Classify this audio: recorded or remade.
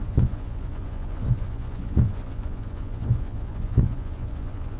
remade